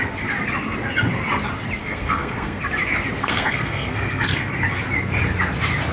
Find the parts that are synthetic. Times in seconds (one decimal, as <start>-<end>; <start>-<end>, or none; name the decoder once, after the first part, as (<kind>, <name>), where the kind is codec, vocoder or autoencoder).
1.8-2.6 (codec, SNAC); 3.2-4.5